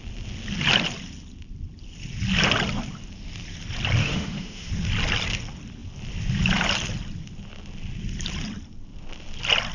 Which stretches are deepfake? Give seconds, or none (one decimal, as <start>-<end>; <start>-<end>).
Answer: 4.0-4.7